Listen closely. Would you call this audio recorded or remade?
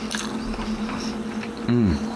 remade